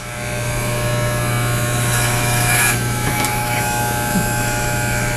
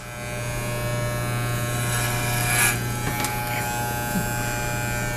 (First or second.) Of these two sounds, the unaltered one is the second